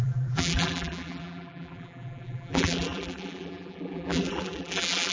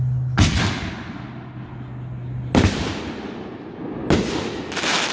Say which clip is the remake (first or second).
first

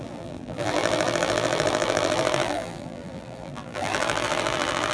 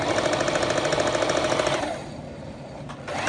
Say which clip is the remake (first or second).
first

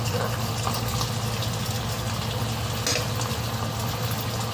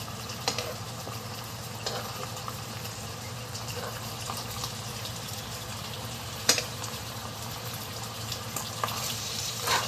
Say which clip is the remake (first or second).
second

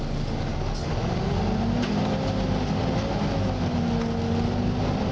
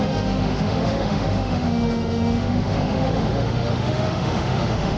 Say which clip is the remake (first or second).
second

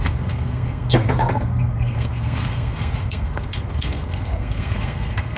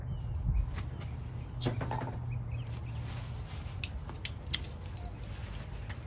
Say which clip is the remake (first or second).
first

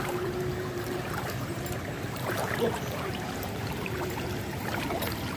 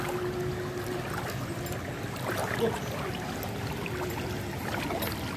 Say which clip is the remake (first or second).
first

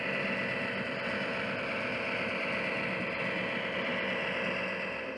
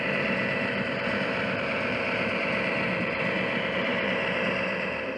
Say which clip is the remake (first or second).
second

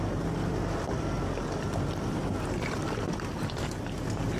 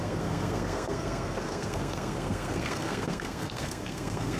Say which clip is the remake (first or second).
second